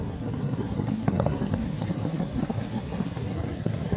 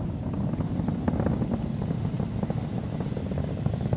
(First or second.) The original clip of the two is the second